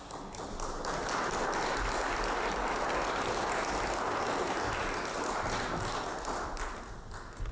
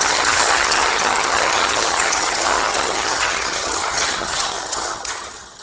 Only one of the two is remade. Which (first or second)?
second